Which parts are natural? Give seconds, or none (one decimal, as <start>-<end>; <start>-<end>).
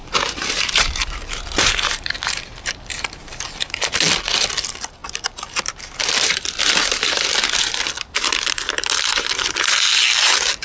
4.0-10.6